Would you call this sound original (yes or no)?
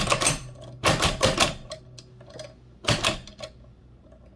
yes